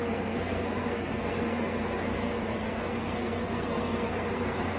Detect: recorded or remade remade